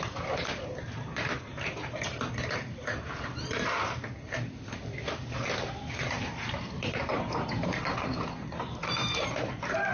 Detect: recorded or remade remade